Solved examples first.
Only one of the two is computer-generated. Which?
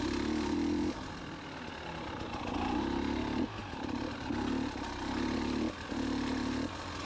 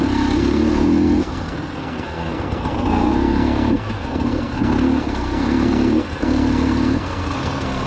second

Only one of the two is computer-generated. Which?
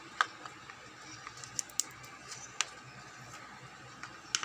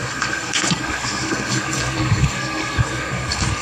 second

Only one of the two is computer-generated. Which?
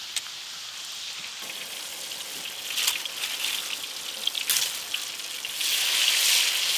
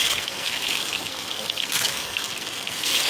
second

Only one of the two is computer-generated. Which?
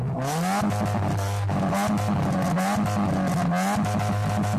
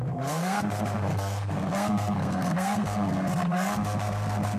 second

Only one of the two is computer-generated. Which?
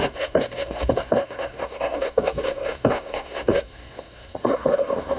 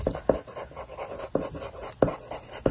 first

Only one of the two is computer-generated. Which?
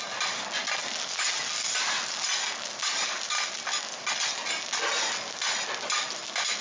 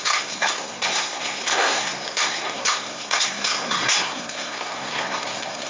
second